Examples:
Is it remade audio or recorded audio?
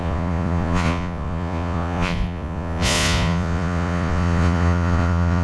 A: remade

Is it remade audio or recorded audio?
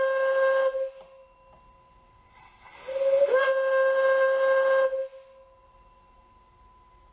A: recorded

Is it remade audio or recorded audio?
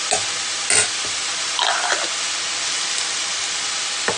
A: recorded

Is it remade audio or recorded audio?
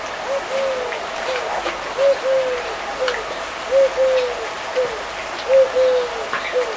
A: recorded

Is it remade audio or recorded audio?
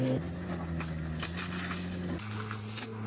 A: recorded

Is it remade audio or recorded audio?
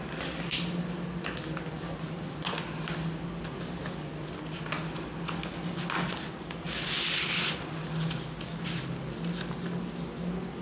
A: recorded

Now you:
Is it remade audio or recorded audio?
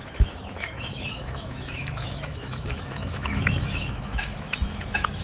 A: remade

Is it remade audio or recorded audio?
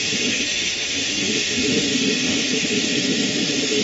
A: remade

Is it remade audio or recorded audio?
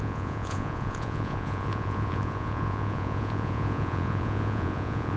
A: remade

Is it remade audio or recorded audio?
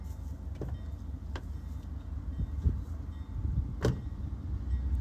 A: recorded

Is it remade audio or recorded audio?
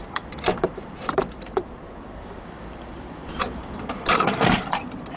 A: remade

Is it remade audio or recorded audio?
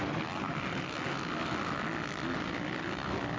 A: recorded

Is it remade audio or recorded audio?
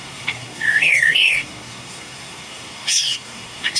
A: remade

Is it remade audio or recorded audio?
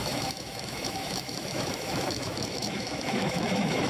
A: remade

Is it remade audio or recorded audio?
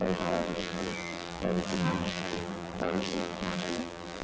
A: remade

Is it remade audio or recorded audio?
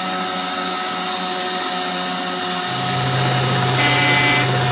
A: recorded